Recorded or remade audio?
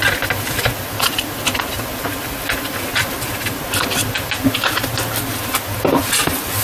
recorded